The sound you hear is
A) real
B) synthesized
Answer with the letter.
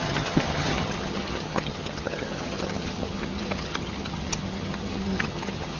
B